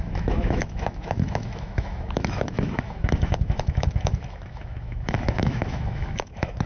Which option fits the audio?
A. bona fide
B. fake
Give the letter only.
B